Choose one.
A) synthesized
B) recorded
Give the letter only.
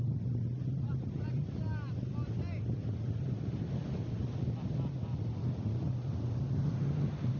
B